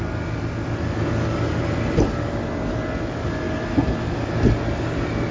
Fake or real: real